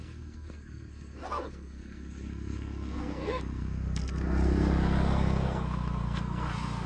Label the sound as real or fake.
fake